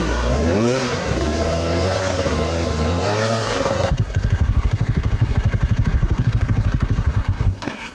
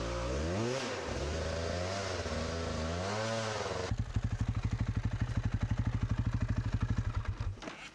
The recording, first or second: second